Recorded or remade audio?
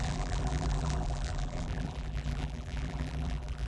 remade